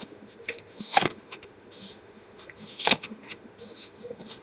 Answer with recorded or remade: remade